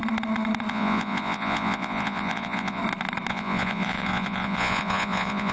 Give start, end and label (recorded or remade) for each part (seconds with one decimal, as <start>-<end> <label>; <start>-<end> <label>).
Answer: 0.0-0.7 recorded; 0.7-2.8 remade; 2.8-3.3 recorded; 3.3-5.5 remade